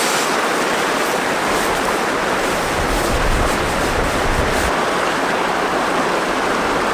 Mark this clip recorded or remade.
recorded